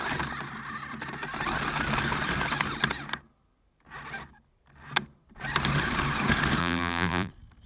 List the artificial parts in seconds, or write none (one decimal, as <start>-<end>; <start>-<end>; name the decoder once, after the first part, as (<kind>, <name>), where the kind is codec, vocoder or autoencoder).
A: 6.6-7.3 (vocoder, BigVGAN v2)